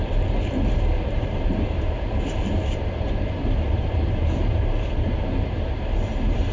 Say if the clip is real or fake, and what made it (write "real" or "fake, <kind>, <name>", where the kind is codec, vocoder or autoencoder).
fake, vocoder, BigVGAN v2